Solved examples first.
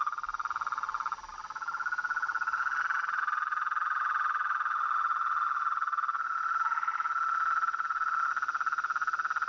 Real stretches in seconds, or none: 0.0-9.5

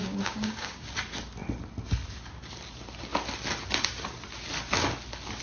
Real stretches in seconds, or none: 0.9-5.4

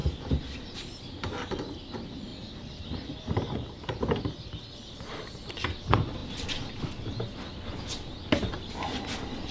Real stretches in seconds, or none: 1.5-2.3; 4.2-9.5